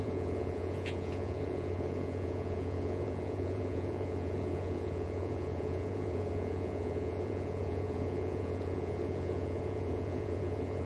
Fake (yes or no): yes